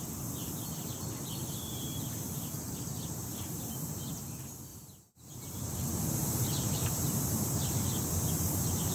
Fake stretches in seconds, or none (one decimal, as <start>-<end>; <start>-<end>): 0.0-0.6; 1.7-8.9